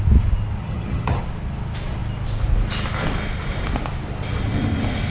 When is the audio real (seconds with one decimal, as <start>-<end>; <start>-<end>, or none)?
0.0-0.6; 1.2-5.1

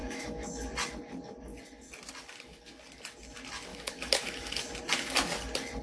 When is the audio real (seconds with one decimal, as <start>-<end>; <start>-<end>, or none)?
0.5-3.7; 4.7-5.8

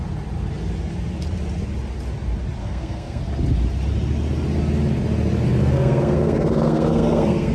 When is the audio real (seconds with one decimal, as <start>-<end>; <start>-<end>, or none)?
0.0-2.6; 3.2-5.6